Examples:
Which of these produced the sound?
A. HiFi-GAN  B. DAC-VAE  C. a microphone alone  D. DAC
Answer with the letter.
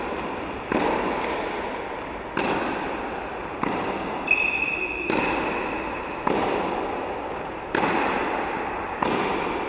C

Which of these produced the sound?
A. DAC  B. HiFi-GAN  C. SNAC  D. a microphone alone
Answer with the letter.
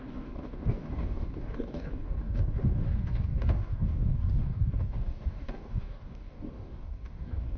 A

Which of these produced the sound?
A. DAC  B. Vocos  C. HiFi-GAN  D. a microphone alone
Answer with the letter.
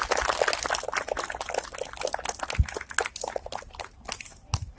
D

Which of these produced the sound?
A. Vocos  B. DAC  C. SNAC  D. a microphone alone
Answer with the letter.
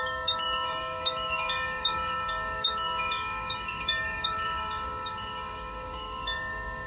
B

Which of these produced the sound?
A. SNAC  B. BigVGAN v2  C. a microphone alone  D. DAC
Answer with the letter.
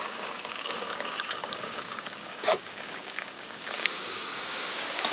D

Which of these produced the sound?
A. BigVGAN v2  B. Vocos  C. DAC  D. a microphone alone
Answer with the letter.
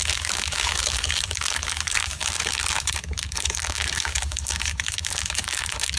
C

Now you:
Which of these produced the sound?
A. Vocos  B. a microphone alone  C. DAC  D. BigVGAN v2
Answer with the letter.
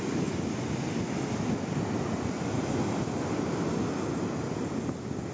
B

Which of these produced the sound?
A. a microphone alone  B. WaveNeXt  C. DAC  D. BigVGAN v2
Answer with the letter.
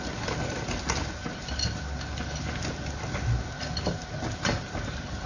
A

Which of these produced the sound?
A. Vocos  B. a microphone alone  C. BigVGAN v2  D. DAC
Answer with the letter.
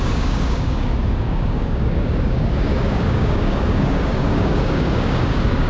D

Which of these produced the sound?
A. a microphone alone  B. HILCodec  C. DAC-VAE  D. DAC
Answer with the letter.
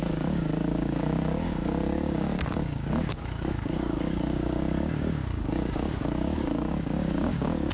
D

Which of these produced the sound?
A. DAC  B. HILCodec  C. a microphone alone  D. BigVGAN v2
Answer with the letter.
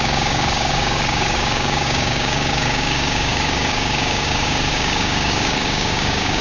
A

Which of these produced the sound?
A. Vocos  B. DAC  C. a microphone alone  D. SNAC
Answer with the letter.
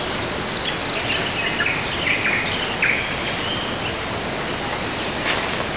C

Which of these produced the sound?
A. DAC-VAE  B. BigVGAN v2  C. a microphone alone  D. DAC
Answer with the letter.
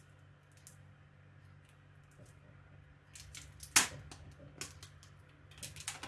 C